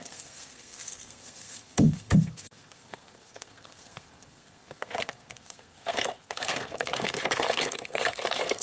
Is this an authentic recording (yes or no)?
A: no